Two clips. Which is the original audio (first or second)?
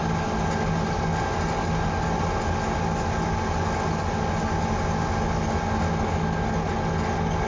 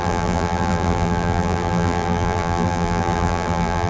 first